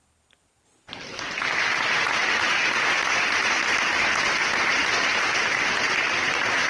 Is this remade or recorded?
recorded